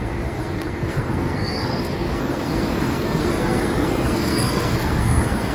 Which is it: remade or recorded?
remade